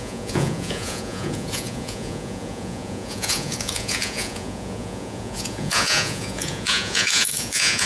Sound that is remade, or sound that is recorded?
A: remade